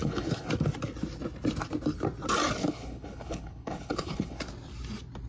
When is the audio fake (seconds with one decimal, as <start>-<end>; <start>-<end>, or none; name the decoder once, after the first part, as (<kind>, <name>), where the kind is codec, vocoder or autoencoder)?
0.0-0.5 (codec, HILCodec); 2.6-4.4